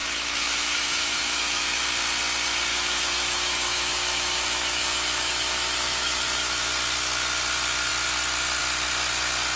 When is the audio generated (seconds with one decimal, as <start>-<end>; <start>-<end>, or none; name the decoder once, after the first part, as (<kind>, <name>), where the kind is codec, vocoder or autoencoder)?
0.0-1.8 (autoencoder, DAC-VAE); 2.7-6.7